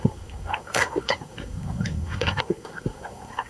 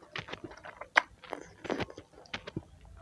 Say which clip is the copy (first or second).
first